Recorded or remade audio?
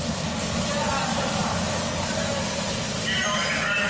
recorded